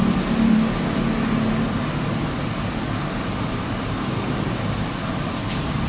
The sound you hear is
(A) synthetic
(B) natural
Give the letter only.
A